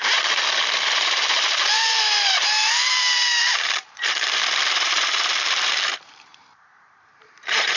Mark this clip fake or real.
fake